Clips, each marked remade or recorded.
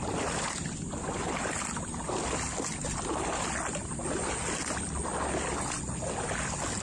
recorded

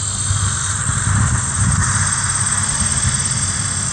recorded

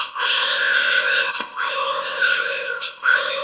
remade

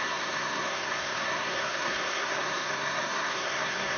remade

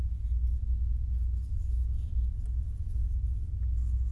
recorded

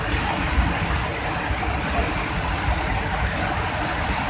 recorded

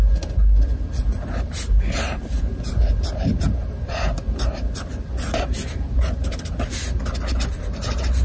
recorded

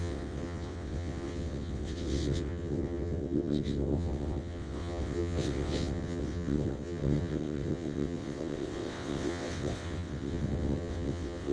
remade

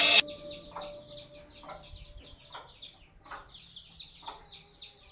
recorded